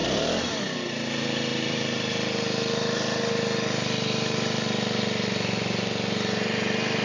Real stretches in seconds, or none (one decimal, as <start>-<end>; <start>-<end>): 0.0-1.5; 2.1-7.0